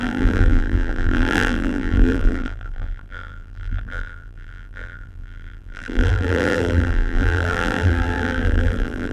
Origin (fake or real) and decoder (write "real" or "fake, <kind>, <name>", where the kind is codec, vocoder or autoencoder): fake, vocoder, BigVGAN v2